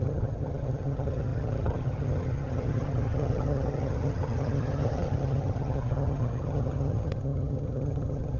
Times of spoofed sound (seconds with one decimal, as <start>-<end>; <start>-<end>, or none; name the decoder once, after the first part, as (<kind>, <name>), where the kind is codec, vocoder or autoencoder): 0.0-8.4 (vocoder, HiFi-GAN)